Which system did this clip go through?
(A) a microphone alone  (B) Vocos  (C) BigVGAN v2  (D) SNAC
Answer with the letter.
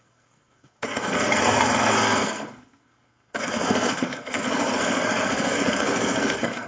D